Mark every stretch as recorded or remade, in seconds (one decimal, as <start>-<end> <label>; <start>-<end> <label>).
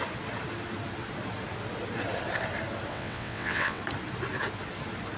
0.0-2.9 recorded; 2.9-3.8 remade; 3.8-5.2 recorded